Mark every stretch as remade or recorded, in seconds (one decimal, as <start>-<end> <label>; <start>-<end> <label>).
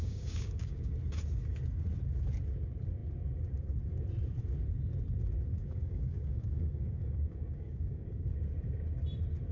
0.0-0.9 remade; 0.9-5.6 recorded; 5.6-8.3 remade; 8.3-9.5 recorded